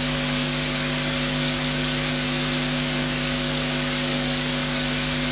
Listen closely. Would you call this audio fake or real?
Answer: fake